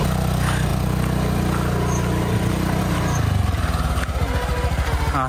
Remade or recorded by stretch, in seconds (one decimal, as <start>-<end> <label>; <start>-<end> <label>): 0.0-5.3 recorded